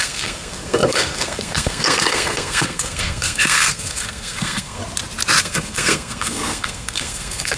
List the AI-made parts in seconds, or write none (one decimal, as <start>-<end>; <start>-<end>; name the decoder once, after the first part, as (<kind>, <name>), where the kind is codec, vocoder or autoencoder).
0.0-4.8 (codec, SNAC); 5.4-7.6

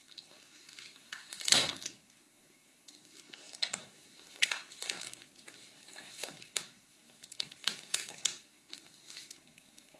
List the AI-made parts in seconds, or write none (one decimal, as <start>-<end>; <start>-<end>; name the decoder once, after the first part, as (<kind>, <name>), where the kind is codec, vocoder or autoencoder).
0.0-10.0 (codec, SNAC)

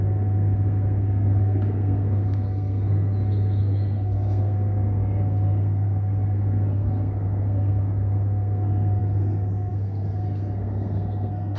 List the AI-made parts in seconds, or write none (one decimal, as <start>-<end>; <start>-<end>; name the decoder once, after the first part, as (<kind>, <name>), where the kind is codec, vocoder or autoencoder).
0.0-11.6 (codec, SNAC)

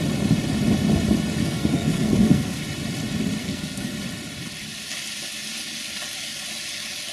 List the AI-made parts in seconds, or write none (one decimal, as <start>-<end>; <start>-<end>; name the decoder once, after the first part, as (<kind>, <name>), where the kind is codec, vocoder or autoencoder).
1.4-2.6 (codec, SNAC); 3.4-3.9